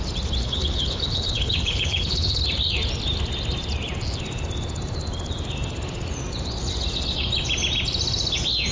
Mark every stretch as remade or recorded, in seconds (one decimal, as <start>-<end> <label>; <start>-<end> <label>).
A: 0.0-0.4 recorded; 0.4-2.4 remade; 2.4-8.7 recorded